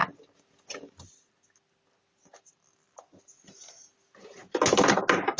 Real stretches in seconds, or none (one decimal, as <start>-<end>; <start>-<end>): 0.0-5.4